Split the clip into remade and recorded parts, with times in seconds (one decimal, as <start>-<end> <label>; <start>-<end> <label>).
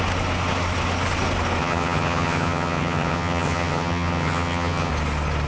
0.0-1.6 recorded; 1.6-4.9 remade; 4.9-5.5 recorded